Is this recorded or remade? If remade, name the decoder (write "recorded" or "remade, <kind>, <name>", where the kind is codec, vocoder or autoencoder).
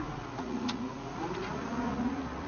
remade, vocoder, Vocos